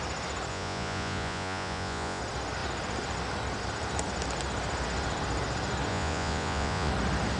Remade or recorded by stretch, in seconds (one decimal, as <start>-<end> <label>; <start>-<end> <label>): 0.0-0.5 recorded; 0.5-2.2 remade; 2.2-5.9 recorded; 5.9-6.9 remade; 6.9-7.4 recorded